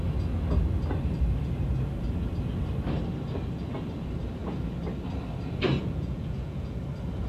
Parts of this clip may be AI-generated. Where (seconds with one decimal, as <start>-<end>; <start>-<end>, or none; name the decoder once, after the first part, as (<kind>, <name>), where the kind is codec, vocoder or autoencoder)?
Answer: 5.8-6.8 (vocoder, Vocos)